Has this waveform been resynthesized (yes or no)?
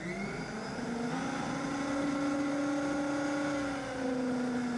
no